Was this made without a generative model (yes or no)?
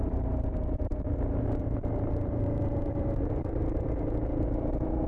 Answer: no